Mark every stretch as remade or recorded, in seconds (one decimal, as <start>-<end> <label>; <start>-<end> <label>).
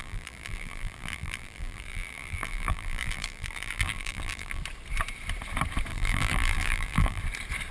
0.0-4.6 remade; 4.6-5.9 recorded; 5.9-7.2 remade; 7.2-7.7 recorded